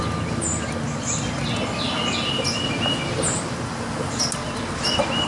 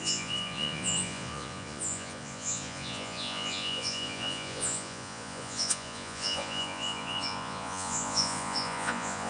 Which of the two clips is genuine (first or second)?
first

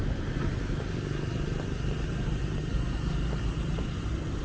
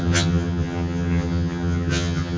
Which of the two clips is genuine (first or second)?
first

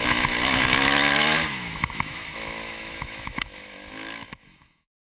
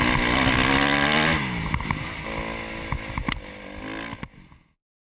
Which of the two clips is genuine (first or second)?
second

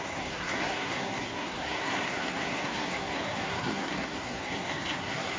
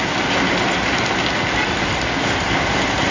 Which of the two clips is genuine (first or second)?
second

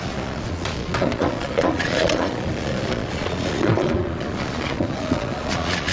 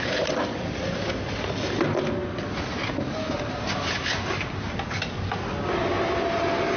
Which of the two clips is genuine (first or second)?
second